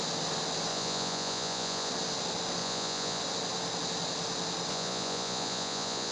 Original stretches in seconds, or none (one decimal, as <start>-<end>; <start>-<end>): 0.0-0.7; 1.9-2.6; 3.2-4.7